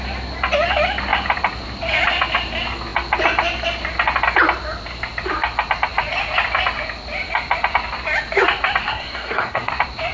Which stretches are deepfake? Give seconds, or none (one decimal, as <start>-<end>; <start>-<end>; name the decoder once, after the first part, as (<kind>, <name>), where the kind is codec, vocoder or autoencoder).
8.8-9.7 (codec, SNAC)